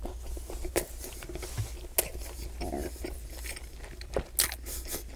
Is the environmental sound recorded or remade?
recorded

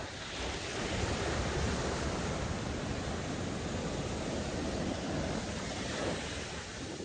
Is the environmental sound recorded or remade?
recorded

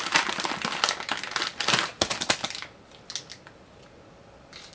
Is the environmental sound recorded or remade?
recorded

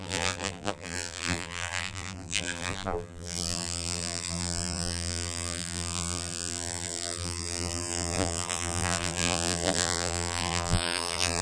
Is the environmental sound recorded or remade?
remade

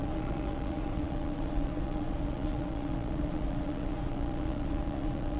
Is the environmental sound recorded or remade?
remade